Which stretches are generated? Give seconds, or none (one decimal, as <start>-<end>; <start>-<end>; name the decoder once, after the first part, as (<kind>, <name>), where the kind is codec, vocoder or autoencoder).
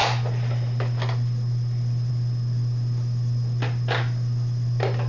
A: none